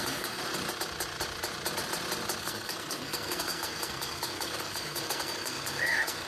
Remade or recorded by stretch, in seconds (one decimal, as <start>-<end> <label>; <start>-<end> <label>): 0.0-0.4 remade; 0.4-2.4 recorded; 2.4-6.3 remade